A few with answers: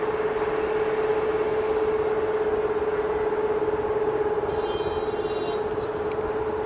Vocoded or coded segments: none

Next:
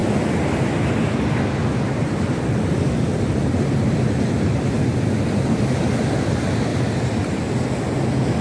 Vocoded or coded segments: none